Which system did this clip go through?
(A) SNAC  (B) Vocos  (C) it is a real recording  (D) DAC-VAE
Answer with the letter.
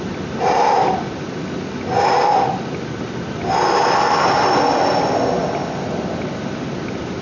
C